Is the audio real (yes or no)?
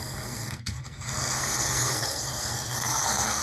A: no